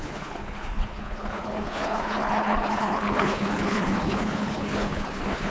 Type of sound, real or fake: fake